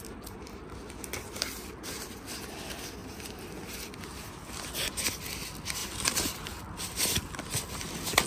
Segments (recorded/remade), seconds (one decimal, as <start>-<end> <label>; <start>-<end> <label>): 0.0-3.0 recorded; 3.0-3.5 remade; 3.5-5.8 recorded; 5.8-6.7 remade; 6.7-8.3 recorded